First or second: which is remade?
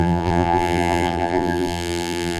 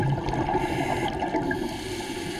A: first